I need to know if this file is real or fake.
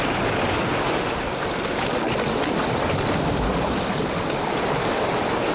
real